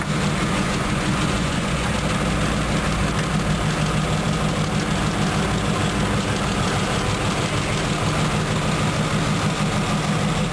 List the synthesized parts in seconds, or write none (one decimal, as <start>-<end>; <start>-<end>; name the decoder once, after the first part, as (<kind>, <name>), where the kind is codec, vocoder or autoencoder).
0.4-1.9 (vocoder, Vocos)